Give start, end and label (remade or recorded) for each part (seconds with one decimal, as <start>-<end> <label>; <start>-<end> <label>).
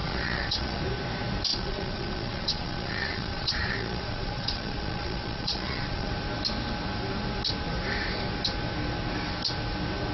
0.0-0.8 remade; 0.8-1.5 recorded; 1.5-6.1 remade; 6.1-10.1 recorded